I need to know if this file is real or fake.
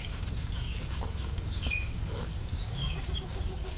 fake